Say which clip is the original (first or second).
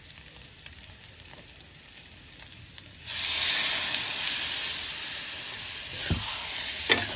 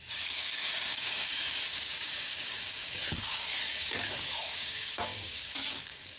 first